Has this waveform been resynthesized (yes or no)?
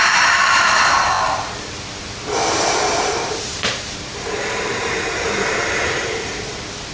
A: yes